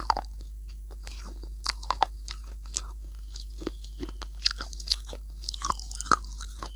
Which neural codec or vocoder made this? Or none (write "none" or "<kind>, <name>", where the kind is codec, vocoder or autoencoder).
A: codec, DAC